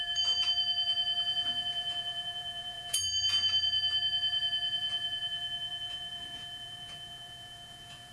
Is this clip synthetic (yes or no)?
yes